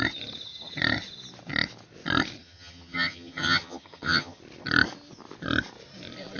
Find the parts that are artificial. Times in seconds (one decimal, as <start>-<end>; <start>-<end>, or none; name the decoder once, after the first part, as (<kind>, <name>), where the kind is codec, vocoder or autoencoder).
2.4-4.4 (vocoder, HiFi-GAN)